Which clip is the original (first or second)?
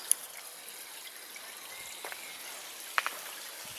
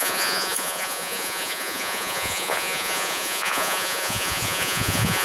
first